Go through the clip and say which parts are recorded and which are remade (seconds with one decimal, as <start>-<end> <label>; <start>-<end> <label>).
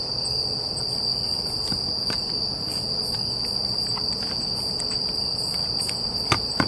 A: 0.0-1.1 recorded; 1.1-1.9 remade; 1.9-6.7 recorded